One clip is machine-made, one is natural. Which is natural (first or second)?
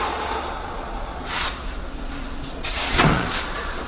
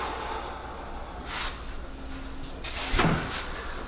second